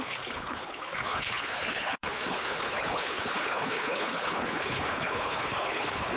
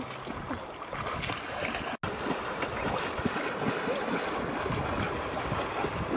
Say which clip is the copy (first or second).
first